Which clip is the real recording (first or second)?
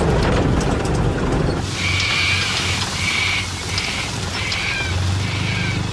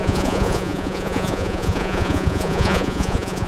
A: first